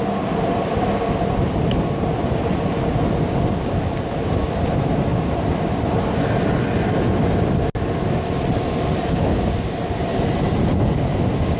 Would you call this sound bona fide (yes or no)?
yes